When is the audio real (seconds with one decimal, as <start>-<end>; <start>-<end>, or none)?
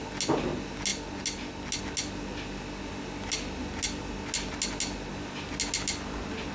0.0-6.5